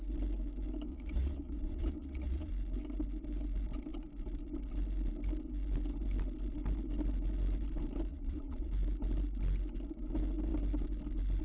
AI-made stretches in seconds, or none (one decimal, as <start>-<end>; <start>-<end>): 0.9-2.5; 8.1-8.7